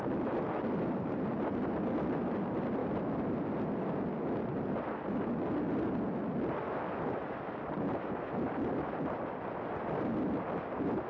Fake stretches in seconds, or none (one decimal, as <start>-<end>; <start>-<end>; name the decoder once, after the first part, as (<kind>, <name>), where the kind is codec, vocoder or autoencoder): none